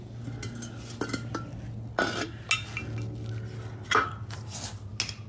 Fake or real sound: real